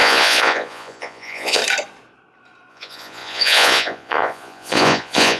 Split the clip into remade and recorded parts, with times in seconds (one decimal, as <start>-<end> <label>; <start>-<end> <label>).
0.0-1.6 remade; 1.6-2.7 recorded; 2.7-5.4 remade